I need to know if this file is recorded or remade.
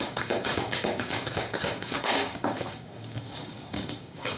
remade